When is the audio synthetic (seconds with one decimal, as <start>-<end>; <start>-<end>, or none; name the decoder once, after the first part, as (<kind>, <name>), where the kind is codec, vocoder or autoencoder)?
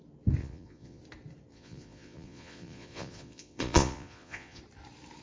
0.4-1.0 (vocoder, Vocos); 1.5-4.6